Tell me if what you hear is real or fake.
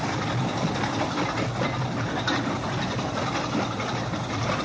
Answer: real